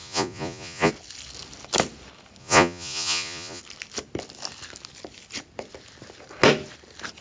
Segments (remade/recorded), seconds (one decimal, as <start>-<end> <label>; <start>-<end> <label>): 0.0-0.9 remade; 0.9-2.4 recorded; 2.4-3.6 remade; 3.6-7.2 recorded